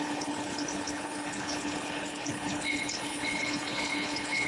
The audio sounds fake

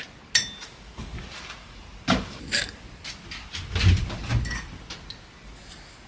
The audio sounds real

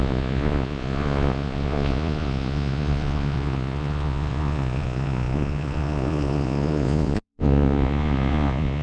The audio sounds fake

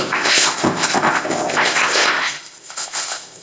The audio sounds fake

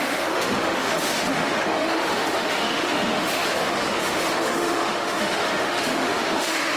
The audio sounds fake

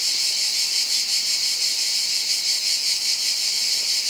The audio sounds real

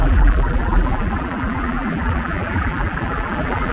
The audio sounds fake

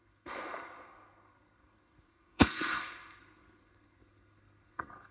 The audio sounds fake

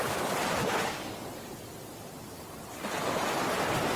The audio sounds real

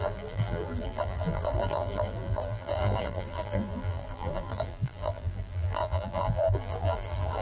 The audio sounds fake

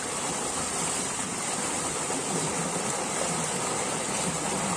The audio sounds real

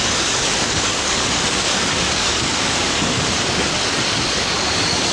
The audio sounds fake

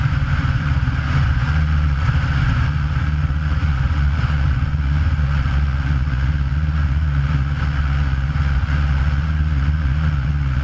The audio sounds fake